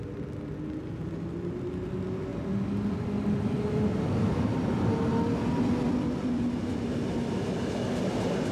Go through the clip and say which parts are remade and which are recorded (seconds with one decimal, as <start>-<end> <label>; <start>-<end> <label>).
0.0-8.5 recorded